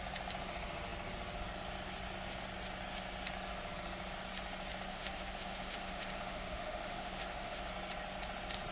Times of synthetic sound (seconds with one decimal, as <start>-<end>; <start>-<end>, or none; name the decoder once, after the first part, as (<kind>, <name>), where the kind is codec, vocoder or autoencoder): 4.9-7.7 (autoencoder, DAC-VAE)